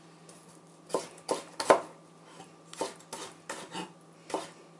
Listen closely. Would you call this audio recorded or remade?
recorded